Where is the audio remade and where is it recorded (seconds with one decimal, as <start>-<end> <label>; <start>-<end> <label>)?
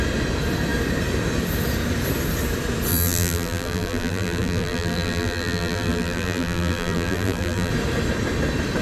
0.0-2.9 recorded; 2.9-7.7 remade; 7.7-8.8 recorded